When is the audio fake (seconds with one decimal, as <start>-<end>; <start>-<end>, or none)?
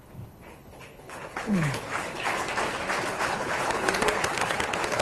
0.0-2.4; 3.1-5.0